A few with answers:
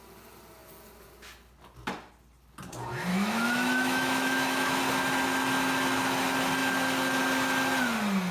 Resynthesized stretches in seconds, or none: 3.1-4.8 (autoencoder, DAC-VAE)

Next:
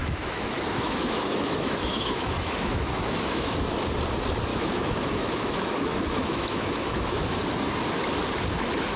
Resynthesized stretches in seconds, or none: 0.0-3.5 (autoencoder, DAC-VAE); 4.5-7.4

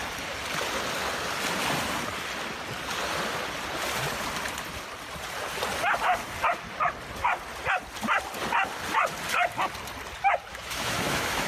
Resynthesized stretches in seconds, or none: 10.5-11.5 (autoencoder, DAC-VAE)

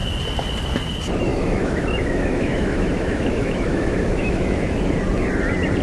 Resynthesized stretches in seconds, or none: 1.3-4.8 (autoencoder, DAC-VAE)

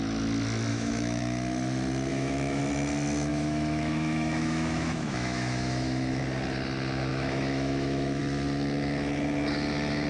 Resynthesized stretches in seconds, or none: 0.7-1.2 (autoencoder, DAC-VAE); 2.1-2.6; 3.3-6.2; 7.1-8.2

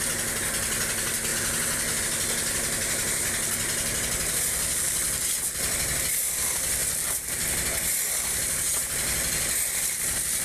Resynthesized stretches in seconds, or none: none